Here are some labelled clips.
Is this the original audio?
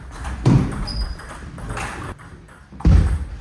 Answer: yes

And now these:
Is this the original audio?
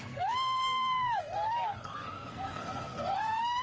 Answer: no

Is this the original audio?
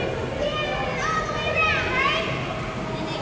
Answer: yes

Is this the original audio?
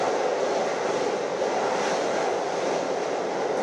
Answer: yes